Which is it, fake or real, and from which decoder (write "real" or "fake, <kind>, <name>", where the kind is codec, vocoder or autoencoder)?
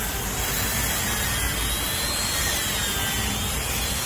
real